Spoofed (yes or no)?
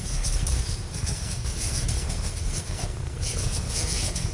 yes